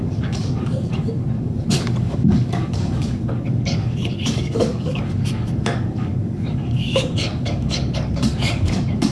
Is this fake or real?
fake